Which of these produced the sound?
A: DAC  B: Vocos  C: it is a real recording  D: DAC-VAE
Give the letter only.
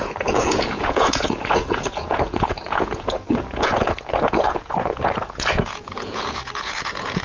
B